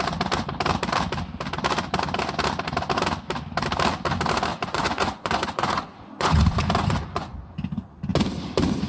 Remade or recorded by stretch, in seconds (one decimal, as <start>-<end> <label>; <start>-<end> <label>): 0.0-4.5 recorded; 4.5-7.4 remade; 7.4-8.9 recorded